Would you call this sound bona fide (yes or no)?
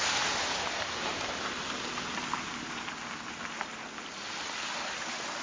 yes